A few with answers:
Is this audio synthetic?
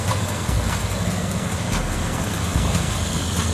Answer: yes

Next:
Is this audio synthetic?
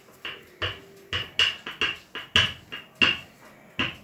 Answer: no